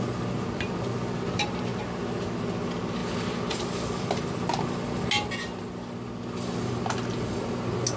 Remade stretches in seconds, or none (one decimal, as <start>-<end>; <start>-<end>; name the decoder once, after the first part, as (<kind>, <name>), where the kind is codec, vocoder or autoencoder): none